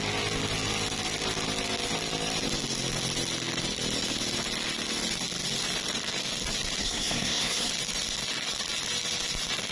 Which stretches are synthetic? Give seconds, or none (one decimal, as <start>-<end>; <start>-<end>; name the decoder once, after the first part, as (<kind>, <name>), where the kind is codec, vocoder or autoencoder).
6.8-7.7 (codec, SNAC)